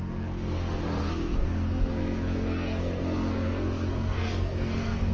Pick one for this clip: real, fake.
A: fake